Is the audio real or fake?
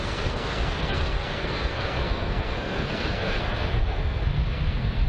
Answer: fake